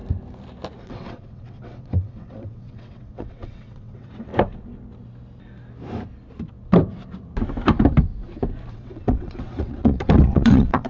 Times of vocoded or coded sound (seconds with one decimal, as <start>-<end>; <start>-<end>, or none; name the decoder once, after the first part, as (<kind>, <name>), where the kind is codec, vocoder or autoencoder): 0.8-4.3 (vocoder, WaveNeXt); 8.7-10.9